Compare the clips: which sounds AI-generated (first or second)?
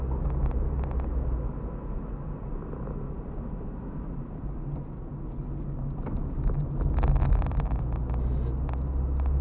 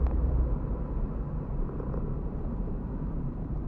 second